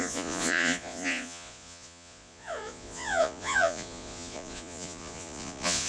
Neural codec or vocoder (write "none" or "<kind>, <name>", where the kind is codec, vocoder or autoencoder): vocoder, Vocos